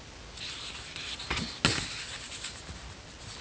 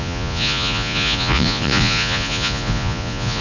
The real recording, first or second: first